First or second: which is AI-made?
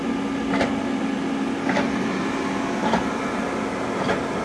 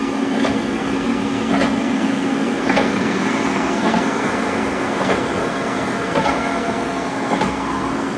second